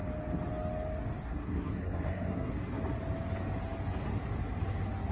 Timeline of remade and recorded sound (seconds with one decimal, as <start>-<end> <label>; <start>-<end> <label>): 0.0-1.2 recorded; 1.2-2.5 remade; 2.5-5.1 recorded